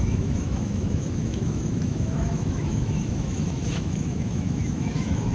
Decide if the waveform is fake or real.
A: fake